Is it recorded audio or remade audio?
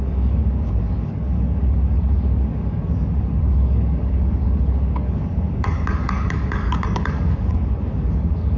remade